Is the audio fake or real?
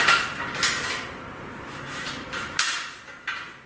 real